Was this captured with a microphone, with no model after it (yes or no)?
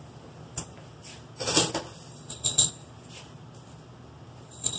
yes